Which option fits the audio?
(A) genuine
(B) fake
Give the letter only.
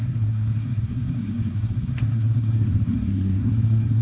B